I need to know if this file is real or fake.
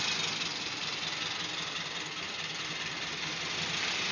real